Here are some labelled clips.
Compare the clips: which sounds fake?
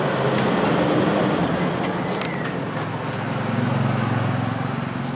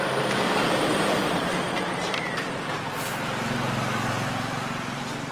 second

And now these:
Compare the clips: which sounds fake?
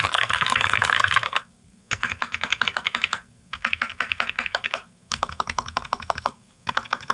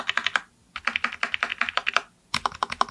first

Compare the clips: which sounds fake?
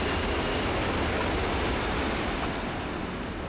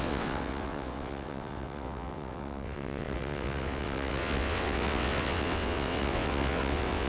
second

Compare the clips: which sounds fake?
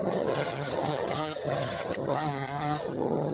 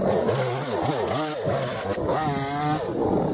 first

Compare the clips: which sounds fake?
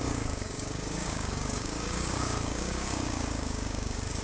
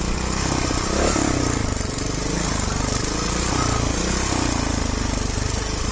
first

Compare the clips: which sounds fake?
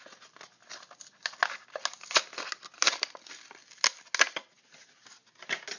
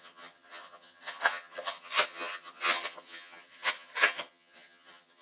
second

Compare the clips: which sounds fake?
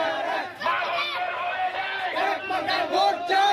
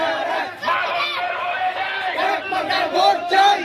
second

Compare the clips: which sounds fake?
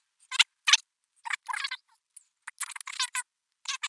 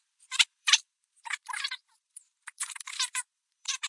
second